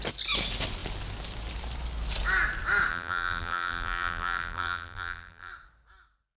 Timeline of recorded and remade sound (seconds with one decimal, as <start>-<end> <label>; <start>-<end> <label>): 0.0-2.9 recorded; 2.9-5.5 remade; 5.5-6.4 recorded